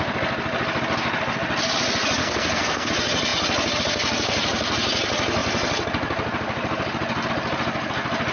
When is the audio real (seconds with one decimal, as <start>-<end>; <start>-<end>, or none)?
0.0-2.2; 2.9-8.3